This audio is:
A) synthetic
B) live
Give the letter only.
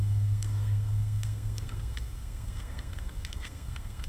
A